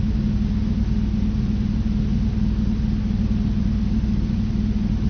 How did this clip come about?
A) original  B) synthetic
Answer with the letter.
A